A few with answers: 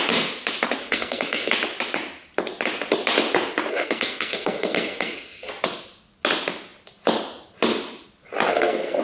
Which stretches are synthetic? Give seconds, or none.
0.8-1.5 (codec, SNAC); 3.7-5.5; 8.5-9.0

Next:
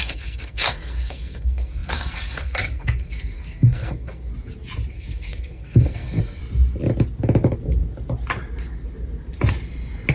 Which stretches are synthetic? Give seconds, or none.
0.0-4.3 (codec, SNAC); 4.9-6.4

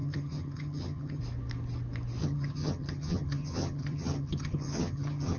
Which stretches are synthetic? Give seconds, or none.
0.0-1.2 (vocoder, HiFi-GAN); 2.2-5.4

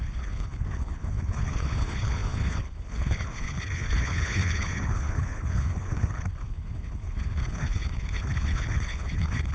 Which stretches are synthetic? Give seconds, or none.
0.0-9.5 (codec, HILCodec)